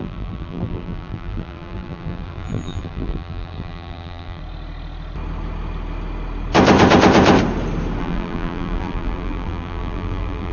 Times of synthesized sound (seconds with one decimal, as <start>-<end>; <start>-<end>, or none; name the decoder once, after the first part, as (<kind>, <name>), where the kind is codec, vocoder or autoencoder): 0.0-4.4 (vocoder, BigVGAN v2); 8.0-10.5